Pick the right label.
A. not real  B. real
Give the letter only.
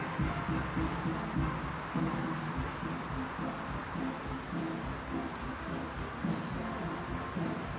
B